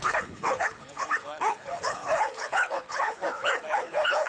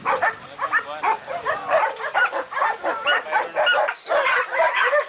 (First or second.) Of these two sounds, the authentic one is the second